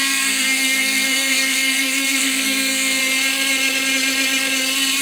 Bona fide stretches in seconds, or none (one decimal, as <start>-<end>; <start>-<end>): 3.0-5.0